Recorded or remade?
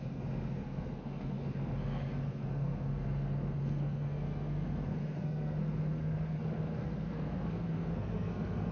remade